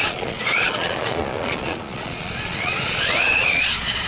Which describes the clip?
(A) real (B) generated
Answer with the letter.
B